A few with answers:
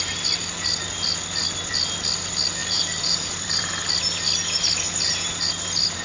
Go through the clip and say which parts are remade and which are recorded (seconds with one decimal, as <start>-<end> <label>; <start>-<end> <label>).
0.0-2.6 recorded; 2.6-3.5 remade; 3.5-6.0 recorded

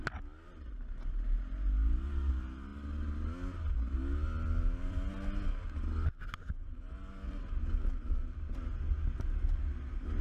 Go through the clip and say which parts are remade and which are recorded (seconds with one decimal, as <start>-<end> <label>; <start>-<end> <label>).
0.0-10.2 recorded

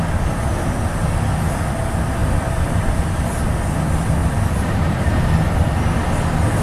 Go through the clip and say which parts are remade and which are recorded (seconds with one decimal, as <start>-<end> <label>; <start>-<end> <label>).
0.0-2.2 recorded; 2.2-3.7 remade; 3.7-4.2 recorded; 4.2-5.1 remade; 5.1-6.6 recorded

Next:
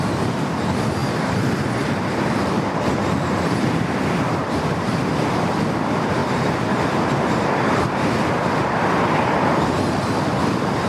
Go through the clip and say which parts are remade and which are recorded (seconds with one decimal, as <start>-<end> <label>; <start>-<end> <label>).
0.0-10.9 remade